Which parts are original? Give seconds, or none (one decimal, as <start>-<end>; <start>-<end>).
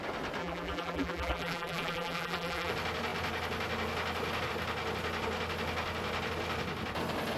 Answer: 0.0-0.4; 2.7-7.4